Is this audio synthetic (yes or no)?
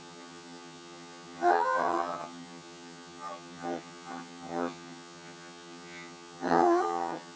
yes